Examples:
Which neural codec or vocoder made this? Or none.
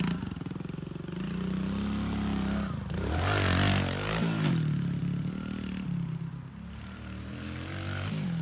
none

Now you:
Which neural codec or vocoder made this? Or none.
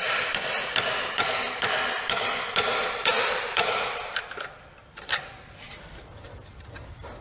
vocoder, BigVGAN v2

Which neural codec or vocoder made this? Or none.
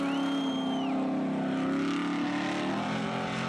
none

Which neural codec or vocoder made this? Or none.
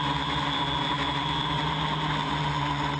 none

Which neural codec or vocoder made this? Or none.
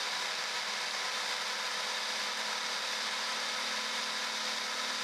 none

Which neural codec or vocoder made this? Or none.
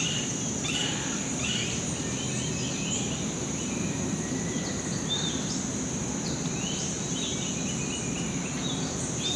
none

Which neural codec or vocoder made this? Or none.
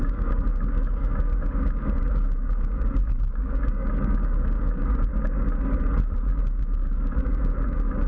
codec, DAC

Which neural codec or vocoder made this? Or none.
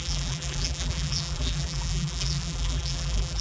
vocoder, BigVGAN v2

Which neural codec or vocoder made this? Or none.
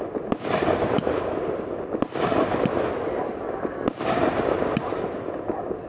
none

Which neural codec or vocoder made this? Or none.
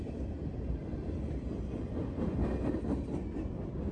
none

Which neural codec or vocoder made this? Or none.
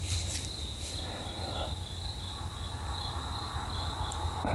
none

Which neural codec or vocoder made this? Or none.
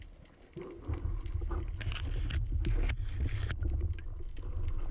none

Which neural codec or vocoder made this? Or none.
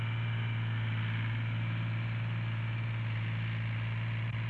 none